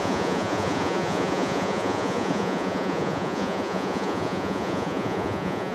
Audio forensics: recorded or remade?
remade